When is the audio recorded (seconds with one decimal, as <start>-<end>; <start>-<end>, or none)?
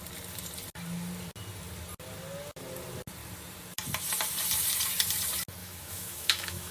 0.0-5.6